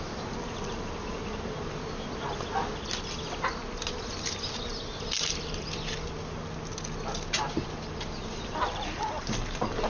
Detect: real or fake real